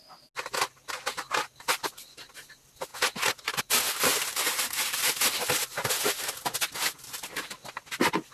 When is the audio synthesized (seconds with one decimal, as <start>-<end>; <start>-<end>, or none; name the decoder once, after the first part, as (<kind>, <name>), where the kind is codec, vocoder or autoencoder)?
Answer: 4.1-5.0 (vocoder, BigVGAN v2)